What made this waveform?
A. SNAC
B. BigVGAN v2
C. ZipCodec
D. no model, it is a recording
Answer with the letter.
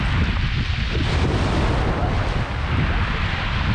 D